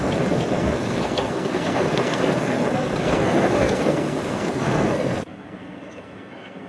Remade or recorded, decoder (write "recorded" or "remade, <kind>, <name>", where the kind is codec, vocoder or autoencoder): remade, codec, SNAC